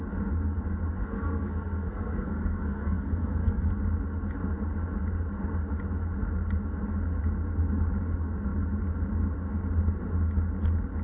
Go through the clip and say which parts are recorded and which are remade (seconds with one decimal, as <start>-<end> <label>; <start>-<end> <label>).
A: 0.0-1.0 recorded; 1.0-3.7 remade; 3.7-11.0 recorded